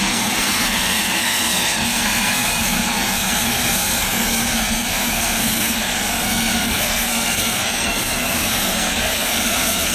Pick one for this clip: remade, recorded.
remade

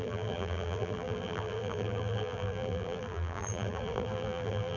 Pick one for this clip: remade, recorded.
remade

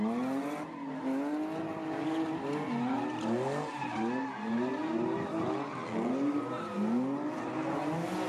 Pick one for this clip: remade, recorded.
recorded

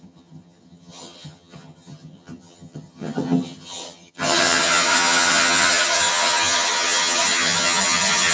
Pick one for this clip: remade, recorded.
remade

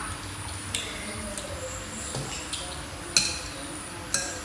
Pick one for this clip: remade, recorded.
recorded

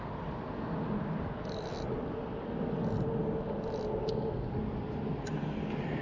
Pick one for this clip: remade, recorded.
recorded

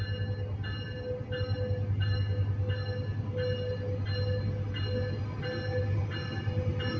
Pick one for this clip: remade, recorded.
recorded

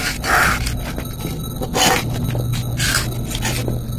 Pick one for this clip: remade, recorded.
recorded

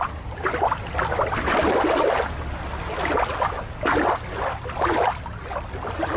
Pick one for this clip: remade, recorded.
recorded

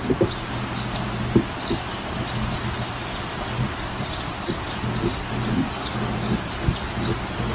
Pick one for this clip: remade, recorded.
recorded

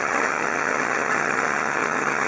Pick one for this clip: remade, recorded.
remade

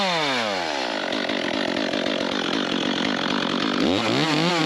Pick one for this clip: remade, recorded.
recorded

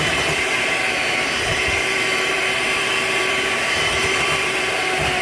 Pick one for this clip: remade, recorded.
remade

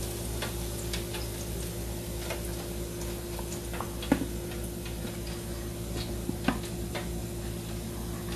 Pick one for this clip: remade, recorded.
recorded